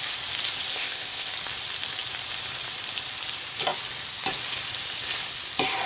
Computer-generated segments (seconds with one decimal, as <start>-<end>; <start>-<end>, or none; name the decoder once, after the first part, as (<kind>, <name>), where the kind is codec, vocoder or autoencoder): 0.7-1.3 (codec, ZipCodec)